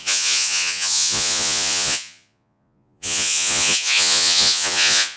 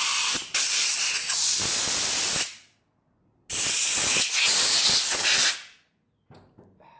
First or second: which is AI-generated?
first